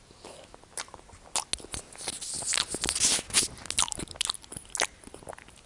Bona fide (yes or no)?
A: yes